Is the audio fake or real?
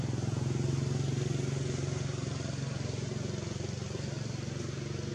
real